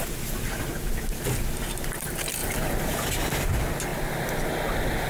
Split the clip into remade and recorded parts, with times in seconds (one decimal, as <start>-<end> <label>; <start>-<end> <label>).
0.0-2.4 recorded; 2.4-3.5 remade; 3.5-5.1 recorded